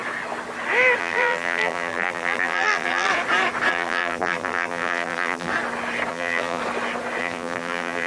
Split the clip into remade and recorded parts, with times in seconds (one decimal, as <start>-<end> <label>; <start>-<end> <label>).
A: 0.0-1.0 recorded; 1.0-3.1 remade; 3.1-3.7 recorded; 3.7-5.5 remade; 5.5-6.1 recorded; 6.1-6.6 remade; 6.6-7.2 recorded; 7.2-8.1 remade